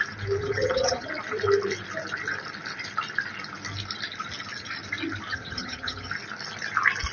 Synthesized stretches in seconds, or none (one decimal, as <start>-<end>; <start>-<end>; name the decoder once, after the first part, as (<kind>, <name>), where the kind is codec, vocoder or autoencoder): 0.4-1.1 (vocoder, HiFi-GAN); 5.3-6.1